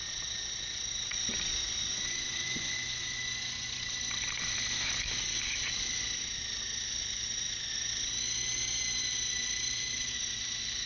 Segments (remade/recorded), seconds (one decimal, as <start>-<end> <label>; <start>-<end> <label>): 0.0-1.9 recorded; 1.9-3.8 remade; 3.8-10.9 recorded